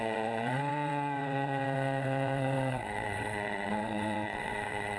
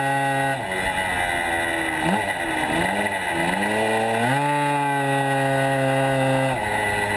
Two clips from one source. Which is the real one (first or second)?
second